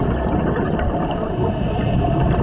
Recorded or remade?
recorded